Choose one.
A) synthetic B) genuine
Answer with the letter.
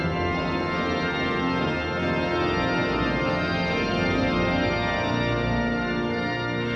B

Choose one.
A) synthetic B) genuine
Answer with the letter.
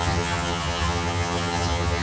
A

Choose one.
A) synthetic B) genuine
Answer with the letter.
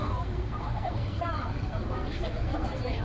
A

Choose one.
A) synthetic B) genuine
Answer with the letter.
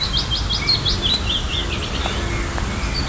B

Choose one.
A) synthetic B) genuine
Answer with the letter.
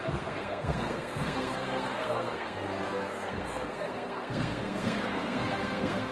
A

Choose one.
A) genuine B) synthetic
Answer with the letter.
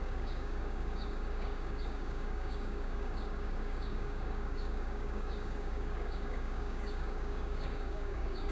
B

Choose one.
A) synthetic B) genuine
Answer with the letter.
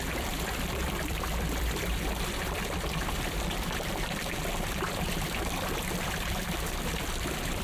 A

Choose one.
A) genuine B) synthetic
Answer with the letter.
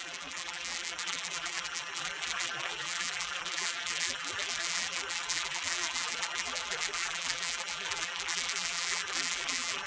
B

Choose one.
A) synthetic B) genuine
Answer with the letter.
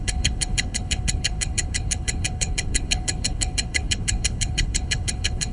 A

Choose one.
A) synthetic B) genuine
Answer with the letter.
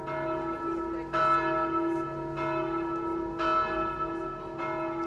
B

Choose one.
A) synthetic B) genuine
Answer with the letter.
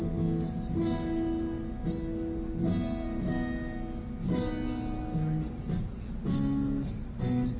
B